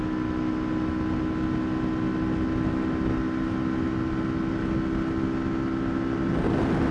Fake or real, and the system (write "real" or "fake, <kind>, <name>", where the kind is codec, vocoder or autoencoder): real